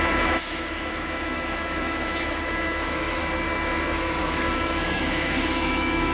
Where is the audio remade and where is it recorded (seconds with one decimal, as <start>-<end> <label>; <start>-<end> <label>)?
0.0-3.2 remade; 3.2-4.2 recorded; 4.2-6.1 remade